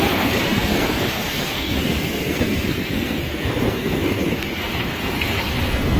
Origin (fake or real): fake